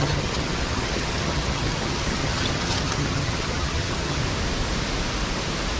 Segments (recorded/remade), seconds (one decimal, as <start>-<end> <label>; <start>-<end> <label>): 0.0-4.2 remade; 4.2-5.8 recorded